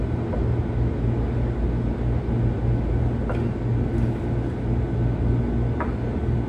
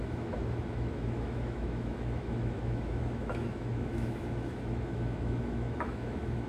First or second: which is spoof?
second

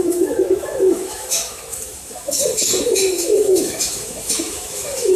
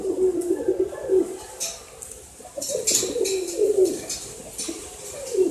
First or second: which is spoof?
first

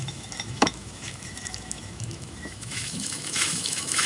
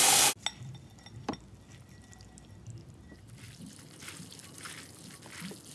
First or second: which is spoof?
first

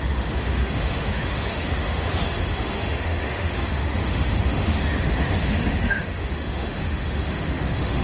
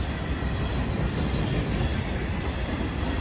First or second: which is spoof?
first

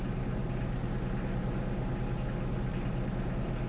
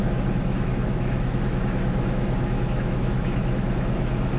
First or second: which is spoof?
second